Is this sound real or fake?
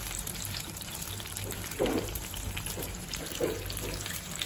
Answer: fake